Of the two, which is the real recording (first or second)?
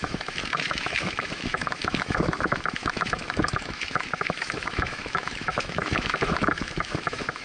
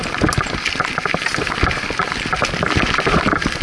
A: second